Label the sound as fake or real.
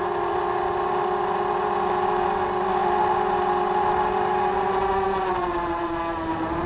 real